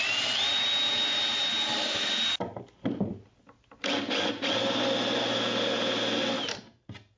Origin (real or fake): real